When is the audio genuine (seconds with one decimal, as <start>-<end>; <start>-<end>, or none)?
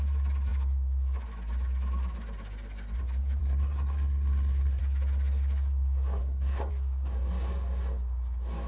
0.0-3.4; 4.8-6.2; 6.7-8.7